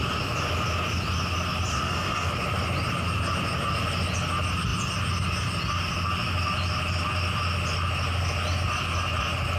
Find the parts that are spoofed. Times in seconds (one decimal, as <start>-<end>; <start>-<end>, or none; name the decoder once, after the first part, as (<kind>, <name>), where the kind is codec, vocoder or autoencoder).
1.7-2.3 (codec, SNAC)